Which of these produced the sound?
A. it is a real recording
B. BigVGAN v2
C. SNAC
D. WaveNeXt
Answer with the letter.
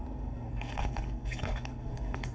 C